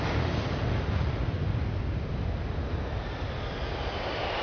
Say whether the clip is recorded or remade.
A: recorded